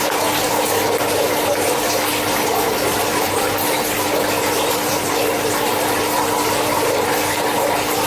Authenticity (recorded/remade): recorded